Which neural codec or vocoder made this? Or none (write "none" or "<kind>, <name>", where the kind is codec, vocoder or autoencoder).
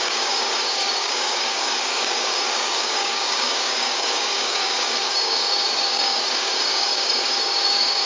codec, DAC